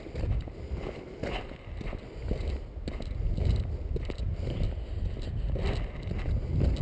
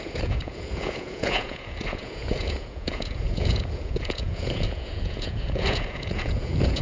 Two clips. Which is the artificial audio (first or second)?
second